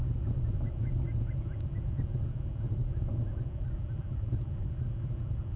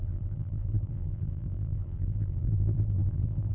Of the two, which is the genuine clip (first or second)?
first